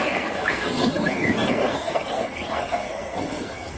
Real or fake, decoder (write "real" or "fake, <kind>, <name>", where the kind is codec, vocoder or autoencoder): fake, codec, SNAC